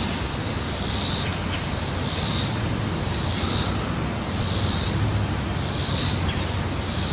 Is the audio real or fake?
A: real